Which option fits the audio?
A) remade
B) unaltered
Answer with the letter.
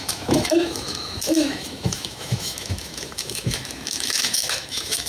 A